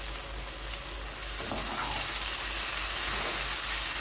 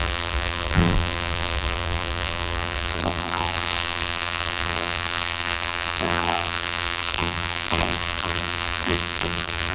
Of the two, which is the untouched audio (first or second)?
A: first